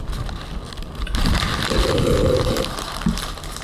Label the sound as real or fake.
real